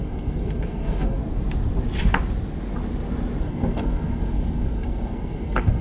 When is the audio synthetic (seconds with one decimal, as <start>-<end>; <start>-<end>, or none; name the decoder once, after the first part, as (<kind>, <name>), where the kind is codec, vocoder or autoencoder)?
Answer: 0.0-1.2 (codec, SNAC); 3.4-5.8